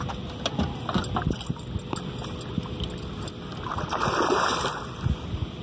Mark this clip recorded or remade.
recorded